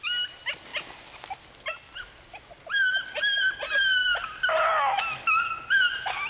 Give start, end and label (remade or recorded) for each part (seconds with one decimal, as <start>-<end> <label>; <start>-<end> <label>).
0.0-6.3 recorded